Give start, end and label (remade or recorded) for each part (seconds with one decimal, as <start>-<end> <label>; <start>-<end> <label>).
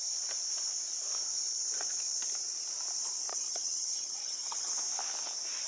0.0-3.3 recorded; 3.3-4.7 remade; 4.7-5.7 recorded